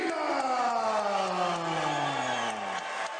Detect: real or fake real